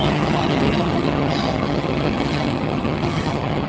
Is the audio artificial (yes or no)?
yes